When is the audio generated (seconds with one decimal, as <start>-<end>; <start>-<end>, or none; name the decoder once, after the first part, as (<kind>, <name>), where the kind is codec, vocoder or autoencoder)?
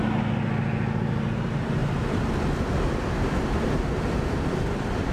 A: none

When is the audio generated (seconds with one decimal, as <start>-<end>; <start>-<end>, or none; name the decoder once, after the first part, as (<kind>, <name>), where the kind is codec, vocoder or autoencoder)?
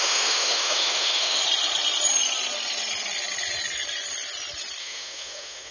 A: 0.0-1.4 (autoencoder, DAC-VAE); 4.8-5.7